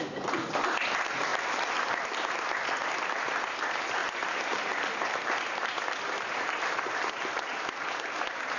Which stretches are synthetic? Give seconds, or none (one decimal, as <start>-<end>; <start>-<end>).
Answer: none

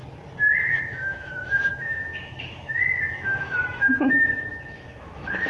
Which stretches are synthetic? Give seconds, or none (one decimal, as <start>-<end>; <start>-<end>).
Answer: 0.6-5.5